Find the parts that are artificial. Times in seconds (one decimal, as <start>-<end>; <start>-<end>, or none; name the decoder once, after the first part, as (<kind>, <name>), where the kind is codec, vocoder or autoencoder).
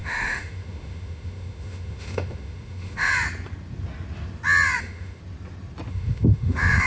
0.0-3.1 (autoencoder, DAC-VAE); 4.8-5.2; 5.9-6.9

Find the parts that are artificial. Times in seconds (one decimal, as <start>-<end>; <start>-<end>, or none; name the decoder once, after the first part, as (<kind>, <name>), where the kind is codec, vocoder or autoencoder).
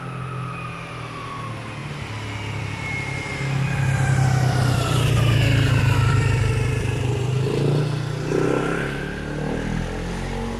none